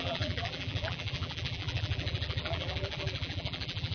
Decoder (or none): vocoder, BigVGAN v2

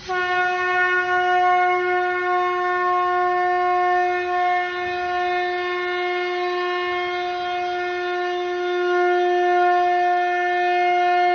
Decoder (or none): none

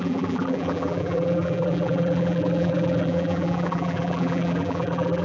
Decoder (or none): vocoder, BigVGAN v2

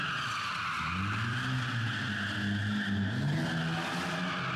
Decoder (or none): none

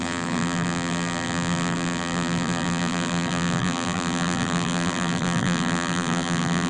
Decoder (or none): vocoder, BigVGAN v2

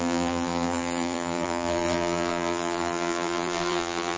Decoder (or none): vocoder, BigVGAN v2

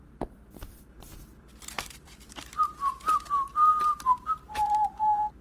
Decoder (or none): vocoder, BigVGAN v2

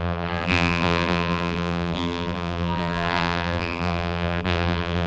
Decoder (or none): vocoder, BigVGAN v2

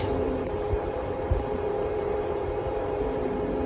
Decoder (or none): vocoder, BigVGAN v2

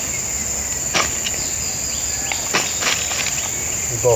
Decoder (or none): none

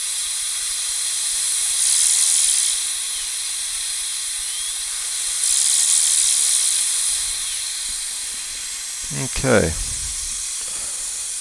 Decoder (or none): vocoder, BigVGAN v2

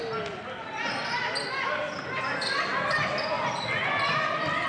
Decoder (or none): none